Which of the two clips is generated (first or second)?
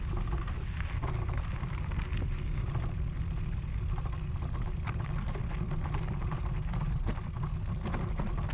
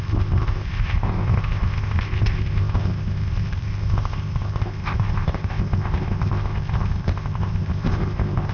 second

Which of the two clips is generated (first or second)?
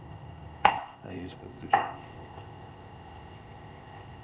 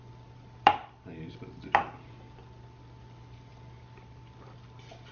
first